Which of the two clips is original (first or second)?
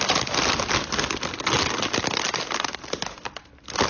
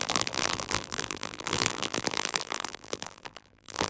first